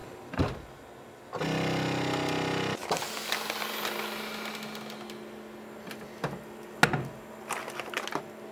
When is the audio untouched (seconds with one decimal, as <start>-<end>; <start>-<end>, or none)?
0.5-8.5